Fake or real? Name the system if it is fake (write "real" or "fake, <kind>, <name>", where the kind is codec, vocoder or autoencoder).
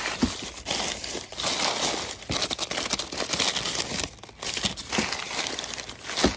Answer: real